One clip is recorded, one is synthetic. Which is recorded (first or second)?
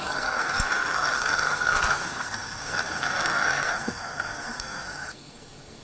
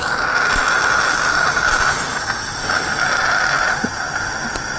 second